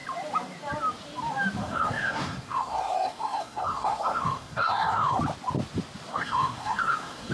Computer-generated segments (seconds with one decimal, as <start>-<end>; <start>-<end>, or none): 1.6-5.2; 6.1-7.3